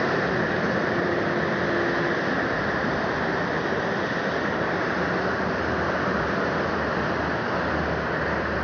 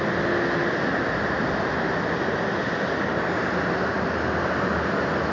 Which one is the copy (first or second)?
first